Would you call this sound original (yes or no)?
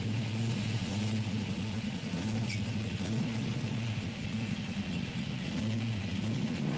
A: no